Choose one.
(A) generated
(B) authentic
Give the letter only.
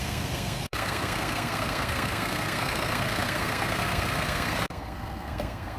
A